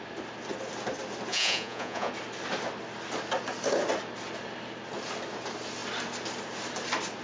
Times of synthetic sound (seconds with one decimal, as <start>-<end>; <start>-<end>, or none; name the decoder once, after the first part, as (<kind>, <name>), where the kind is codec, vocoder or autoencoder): 1.3-2.1 (vocoder, Vocos)